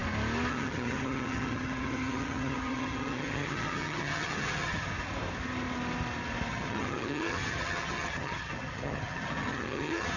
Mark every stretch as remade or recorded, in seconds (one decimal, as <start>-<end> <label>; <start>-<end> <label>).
0.0-0.5 recorded; 0.5-4.9 remade; 4.9-6.5 recorded; 6.5-10.2 remade